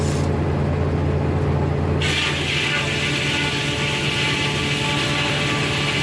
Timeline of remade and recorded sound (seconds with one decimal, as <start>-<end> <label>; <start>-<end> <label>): 0.0-6.0 recorded